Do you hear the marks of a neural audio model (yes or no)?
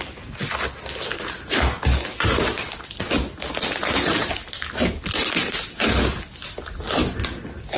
no